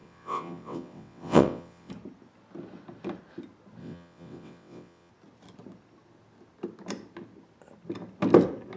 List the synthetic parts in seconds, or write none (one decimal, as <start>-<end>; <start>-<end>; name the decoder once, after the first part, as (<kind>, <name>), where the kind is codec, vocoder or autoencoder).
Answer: 0.0-1.9 (vocoder, WaveNeXt); 3.8-5.1